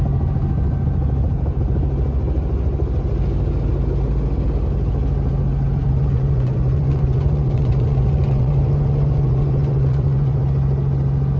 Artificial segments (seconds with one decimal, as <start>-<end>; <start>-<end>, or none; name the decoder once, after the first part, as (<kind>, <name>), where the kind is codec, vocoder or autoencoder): 5.8-10.4 (vocoder, Vocos)